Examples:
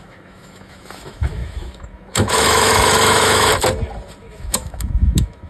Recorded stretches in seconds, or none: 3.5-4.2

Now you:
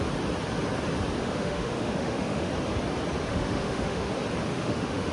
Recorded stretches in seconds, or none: 0.0-1.2; 2.5-3.3; 4.1-4.5

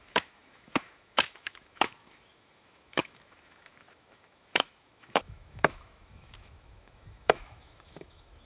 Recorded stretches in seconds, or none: none

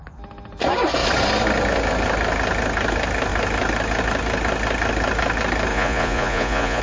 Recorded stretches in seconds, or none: 0.0-5.7

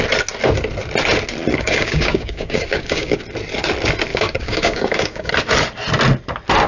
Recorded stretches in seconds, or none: 0.0-1.5; 3.2-4.1; 5.3-6.7

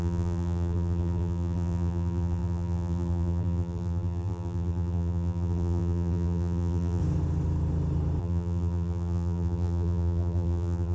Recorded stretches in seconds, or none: 7.0-8.2

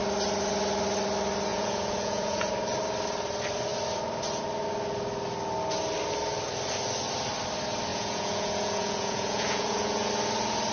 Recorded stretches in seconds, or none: 0.0-1.5; 2.5-7.9; 10.1-10.7

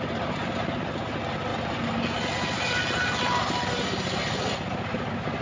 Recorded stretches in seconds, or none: 0.0-5.4